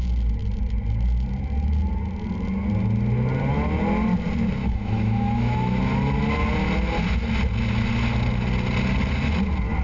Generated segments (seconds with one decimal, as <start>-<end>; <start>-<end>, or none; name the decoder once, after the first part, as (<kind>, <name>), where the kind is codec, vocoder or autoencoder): 4.6-5.8 (autoencoder, DAC-VAE)